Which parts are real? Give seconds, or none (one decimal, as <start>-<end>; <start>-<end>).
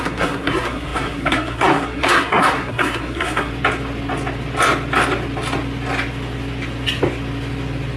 3.5-8.0